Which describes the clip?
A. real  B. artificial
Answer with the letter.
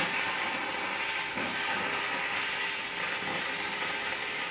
A